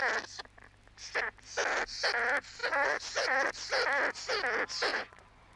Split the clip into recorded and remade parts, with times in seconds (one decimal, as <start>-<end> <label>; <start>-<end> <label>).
0.0-2.6 recorded; 2.6-3.5 remade; 3.5-4.9 recorded; 4.9-5.6 remade